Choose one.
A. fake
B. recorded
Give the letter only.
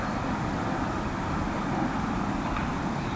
B